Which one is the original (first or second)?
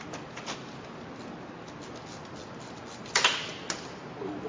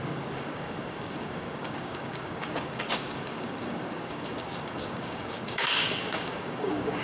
first